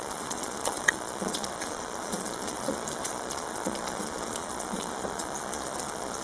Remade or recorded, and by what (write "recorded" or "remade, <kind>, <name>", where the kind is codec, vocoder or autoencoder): remade, vocoder, Vocos